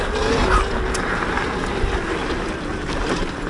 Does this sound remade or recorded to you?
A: recorded